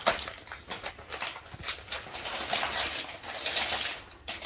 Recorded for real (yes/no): yes